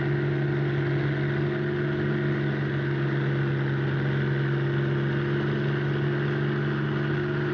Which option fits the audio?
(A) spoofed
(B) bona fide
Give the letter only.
B